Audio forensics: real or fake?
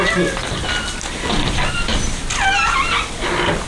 real